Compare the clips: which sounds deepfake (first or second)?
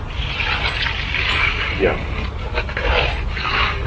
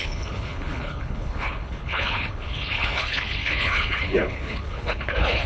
second